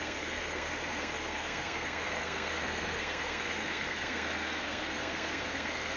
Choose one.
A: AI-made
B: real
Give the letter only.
A